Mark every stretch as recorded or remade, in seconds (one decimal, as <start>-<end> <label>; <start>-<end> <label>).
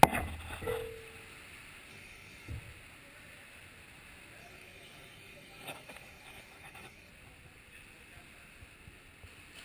0.0-1.9 recorded; 1.9-2.5 remade; 2.5-4.4 recorded; 4.4-7.1 remade; 7.1-9.6 recorded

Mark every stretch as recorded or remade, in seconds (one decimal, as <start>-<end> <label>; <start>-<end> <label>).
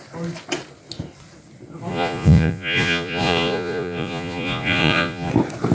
0.0-1.9 recorded; 1.9-5.3 remade; 5.3-5.7 recorded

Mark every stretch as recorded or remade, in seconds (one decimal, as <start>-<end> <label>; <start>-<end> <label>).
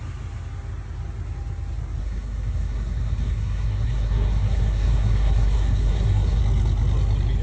0.0-2.0 recorded; 2.0-6.4 remade; 6.4-7.4 recorded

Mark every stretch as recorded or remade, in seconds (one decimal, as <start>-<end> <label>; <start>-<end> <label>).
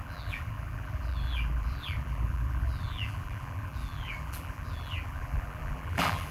0.0-6.3 remade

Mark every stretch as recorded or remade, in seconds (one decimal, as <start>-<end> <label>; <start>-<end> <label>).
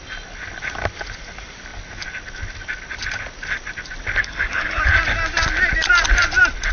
0.0-4.2 recorded; 4.2-4.8 remade; 4.8-6.7 recorded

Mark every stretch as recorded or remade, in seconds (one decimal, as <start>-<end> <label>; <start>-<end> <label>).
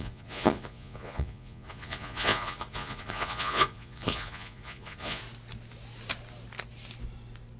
0.0-5.2 remade; 5.2-7.6 recorded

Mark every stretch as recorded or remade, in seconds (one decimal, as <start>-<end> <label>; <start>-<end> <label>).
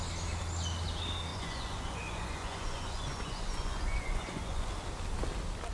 0.0-1.3 recorded; 1.3-4.7 remade; 4.7-5.7 recorded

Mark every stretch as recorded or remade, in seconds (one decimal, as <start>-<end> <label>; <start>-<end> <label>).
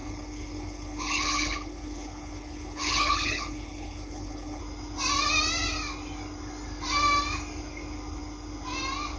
0.0-4.6 remade; 4.6-9.2 recorded